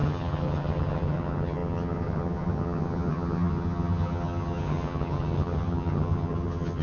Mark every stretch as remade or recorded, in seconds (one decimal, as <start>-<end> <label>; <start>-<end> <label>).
0.0-6.8 remade